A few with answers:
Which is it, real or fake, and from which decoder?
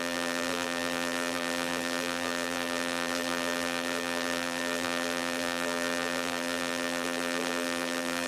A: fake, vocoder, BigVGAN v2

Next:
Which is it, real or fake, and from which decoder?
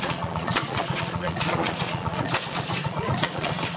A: fake, vocoder, Vocos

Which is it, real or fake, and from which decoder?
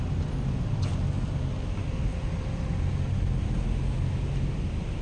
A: real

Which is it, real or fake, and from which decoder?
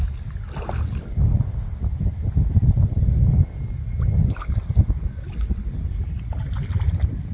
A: real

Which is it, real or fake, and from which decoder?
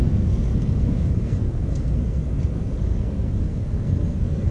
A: fake, codec, SNAC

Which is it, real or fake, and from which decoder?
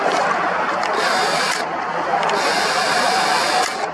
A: real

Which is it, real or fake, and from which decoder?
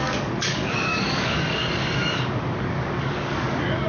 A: fake, codec, DAC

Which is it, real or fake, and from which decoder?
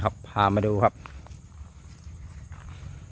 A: real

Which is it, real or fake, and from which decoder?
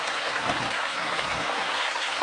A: fake, codec, SNAC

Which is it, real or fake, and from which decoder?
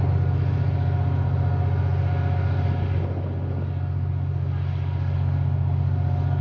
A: real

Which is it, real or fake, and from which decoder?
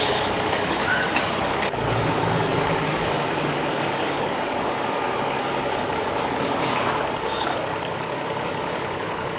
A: fake, codec, DAC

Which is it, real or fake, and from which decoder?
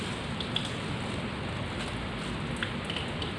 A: real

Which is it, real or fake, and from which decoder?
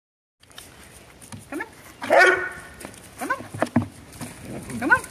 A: real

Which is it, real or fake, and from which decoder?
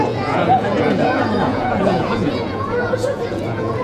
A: fake, vocoder, Vocos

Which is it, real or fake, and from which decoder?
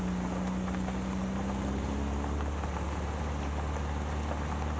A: real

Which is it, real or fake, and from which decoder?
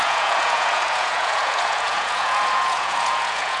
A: fake, vocoder, Vocos